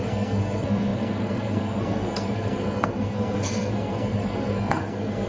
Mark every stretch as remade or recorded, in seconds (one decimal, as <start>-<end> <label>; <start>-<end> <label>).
0.0-5.3 remade